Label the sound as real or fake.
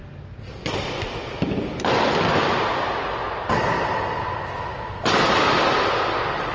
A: real